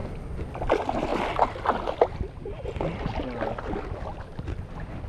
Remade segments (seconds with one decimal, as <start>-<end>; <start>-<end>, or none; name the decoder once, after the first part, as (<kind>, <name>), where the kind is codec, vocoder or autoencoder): none

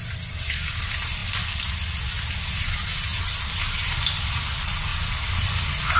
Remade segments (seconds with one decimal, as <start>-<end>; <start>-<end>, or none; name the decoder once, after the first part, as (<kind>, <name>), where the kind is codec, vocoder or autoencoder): 3.1-4.0 (vocoder, BigVGAN v2); 4.9-6.0

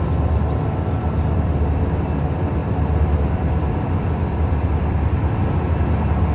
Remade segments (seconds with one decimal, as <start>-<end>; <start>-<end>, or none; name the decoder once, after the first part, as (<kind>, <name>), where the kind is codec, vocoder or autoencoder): 2.6-5.8 (vocoder, BigVGAN v2)

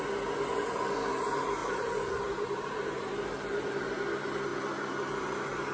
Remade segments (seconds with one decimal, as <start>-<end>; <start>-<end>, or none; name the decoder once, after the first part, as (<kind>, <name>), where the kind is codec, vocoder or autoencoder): 1.6-3.9 (vocoder, BigVGAN v2)

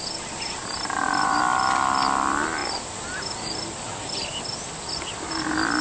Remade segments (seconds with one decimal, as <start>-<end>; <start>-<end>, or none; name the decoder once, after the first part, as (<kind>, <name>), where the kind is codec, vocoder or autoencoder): 0.6-1.4 (vocoder, BigVGAN v2)

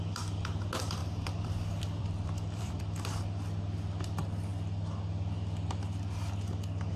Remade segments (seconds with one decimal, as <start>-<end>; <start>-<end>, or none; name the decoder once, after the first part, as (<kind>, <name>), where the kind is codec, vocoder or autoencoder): 1.0-2.8 (vocoder, BigVGAN v2)

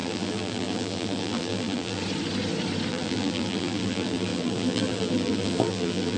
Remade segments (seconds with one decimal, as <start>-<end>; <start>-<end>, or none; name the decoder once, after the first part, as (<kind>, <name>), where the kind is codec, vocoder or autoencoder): 0.0-2.0 (vocoder, BigVGAN v2); 2.9-6.2